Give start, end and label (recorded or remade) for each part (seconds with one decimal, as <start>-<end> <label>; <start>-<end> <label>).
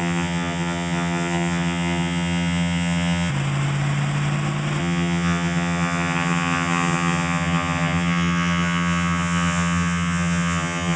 0.0-3.3 remade; 3.3-4.8 recorded; 4.8-11.0 remade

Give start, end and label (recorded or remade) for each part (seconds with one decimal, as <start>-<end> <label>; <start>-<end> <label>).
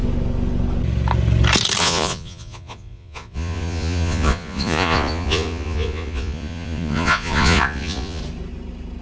0.0-1.8 recorded; 1.8-8.2 remade; 8.2-9.0 recorded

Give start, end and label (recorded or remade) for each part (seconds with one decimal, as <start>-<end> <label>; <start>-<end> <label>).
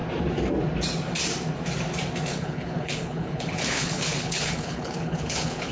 0.0-2.3 recorded; 2.3-5.7 remade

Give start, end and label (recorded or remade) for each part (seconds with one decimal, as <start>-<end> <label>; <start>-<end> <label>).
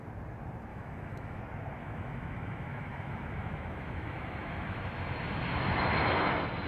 0.0-0.7 recorded; 0.7-1.4 remade; 1.4-1.8 recorded; 1.8-4.8 remade; 4.8-6.7 recorded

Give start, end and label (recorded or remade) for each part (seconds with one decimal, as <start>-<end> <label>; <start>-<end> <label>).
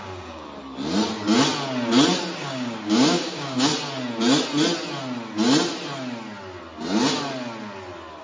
0.0-0.6 remade; 0.6-2.2 recorded; 2.2-3.7 remade; 3.7-8.2 recorded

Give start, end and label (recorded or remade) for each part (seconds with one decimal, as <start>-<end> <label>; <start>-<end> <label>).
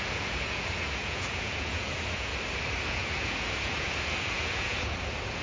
0.0-2.3 remade; 2.3-2.9 recorded; 2.9-5.4 remade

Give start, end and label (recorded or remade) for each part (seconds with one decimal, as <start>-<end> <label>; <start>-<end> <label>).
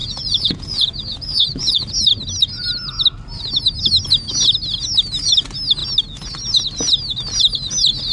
0.0-1.9 remade; 1.9-8.1 recorded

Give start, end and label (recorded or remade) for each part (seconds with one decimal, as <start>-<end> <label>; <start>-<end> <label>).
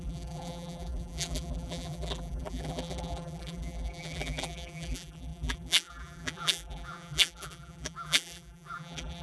0.0-9.2 remade